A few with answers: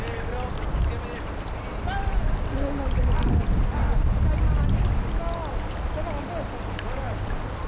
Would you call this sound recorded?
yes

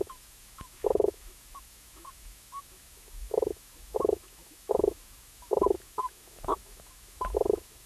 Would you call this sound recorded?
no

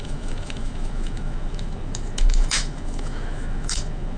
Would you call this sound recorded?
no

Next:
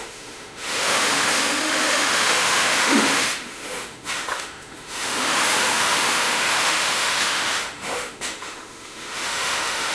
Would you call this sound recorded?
no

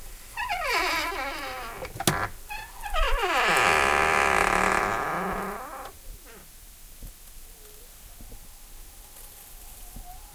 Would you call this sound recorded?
yes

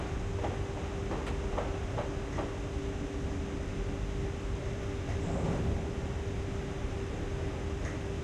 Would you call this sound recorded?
yes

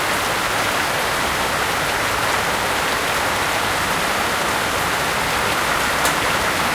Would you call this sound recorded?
yes